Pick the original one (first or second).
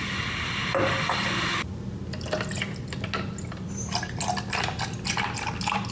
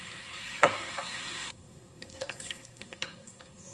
first